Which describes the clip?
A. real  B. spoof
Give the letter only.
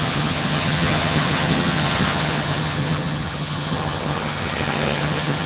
B